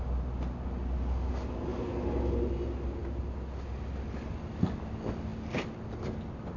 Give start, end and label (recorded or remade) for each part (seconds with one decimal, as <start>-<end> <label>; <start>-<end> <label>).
0.0-6.6 recorded